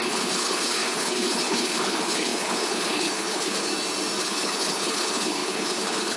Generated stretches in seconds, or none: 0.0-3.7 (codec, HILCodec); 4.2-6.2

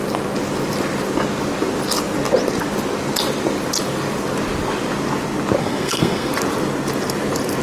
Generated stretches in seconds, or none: 5.6-6.3 (codec, SNAC)